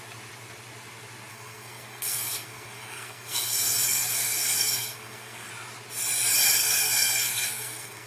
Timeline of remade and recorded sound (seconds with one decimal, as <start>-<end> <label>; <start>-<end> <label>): 0.0-1.3 recorded; 1.3-5.5 remade; 5.5-6.6 recorded; 6.6-8.1 remade